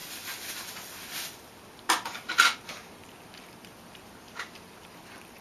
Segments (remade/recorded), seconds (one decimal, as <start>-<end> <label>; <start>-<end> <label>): 0.0-2.2 recorded; 2.2-3.0 remade; 3.0-4.3 recorded; 4.3-5.4 remade